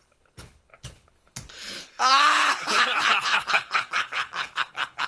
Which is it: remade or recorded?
remade